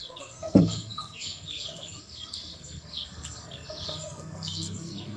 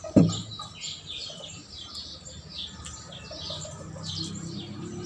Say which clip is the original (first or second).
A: second